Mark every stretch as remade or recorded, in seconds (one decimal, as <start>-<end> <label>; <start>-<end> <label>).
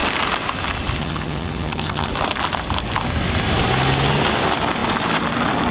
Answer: 0.0-1.0 recorded; 1.0-2.1 remade; 2.1-5.7 recorded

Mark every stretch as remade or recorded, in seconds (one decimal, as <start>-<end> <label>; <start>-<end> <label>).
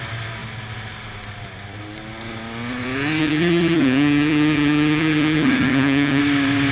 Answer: 0.0-3.2 recorded; 3.2-6.2 remade; 6.2-6.7 recorded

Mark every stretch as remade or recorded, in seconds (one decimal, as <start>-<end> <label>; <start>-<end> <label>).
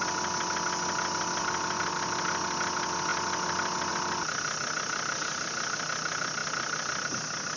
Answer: 0.0-7.6 recorded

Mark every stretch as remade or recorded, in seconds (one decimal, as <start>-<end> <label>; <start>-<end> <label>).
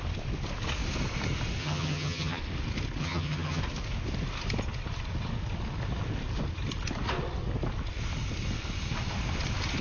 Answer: 0.0-1.6 recorded; 1.6-2.4 remade; 2.4-3.0 recorded; 3.0-3.6 remade; 3.6-9.8 recorded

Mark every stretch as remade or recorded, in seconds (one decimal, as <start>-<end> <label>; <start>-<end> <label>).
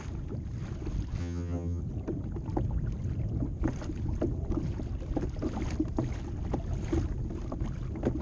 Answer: 0.0-1.2 recorded; 1.2-1.8 remade; 1.8-8.2 recorded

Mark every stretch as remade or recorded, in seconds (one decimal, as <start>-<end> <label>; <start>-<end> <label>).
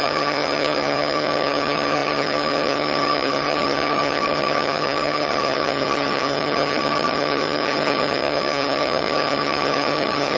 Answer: 0.0-10.4 remade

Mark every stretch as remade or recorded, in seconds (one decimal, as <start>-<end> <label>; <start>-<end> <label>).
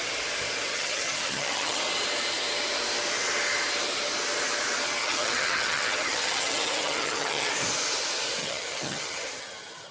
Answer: 0.0-0.7 recorded; 0.7-1.8 remade; 1.8-5.0 recorded; 5.0-7.5 remade; 7.5-8.4 recorded; 8.4-9.9 remade